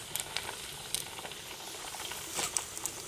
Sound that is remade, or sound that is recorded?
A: recorded